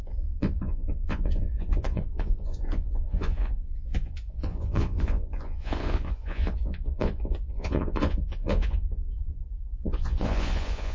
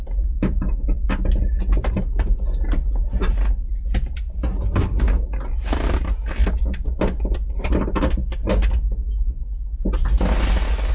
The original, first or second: second